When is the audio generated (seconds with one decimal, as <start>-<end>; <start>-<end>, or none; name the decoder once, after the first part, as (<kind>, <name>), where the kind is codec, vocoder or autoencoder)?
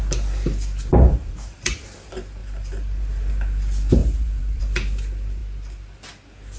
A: 0.9-1.8 (vocoder, BigVGAN v2); 2.4-3.3; 4.0-4.6